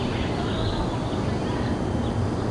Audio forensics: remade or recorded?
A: recorded